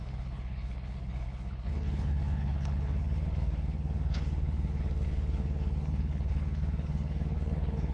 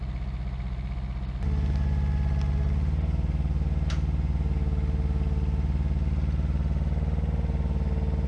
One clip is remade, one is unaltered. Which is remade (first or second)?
first